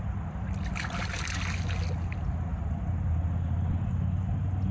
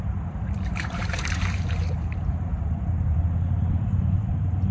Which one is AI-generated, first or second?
second